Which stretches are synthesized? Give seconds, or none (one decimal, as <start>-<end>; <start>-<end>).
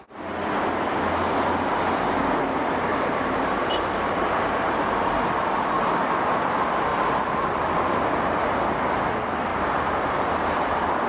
2.9-5.1; 6.9-8.5; 9.5-10.7